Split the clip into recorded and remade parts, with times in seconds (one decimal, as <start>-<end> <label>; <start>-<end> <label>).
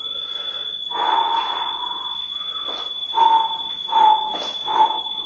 0.0-4.3 recorded; 4.3-5.3 remade